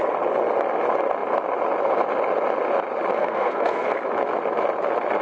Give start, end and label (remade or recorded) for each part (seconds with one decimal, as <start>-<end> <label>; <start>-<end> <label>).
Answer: 0.0-3.2 recorded; 3.2-3.9 remade; 3.9-5.2 recorded